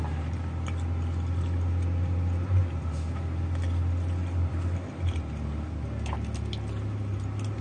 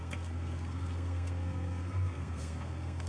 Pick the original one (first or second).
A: first